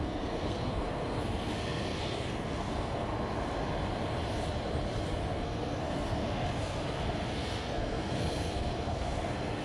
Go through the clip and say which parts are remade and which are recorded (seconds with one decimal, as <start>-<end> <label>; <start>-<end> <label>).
0.0-3.1 remade; 3.1-5.3 recorded; 5.3-9.6 remade